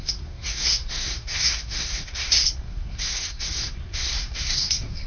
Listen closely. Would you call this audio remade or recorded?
remade